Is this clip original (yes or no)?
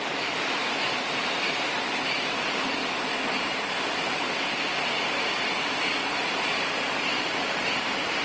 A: yes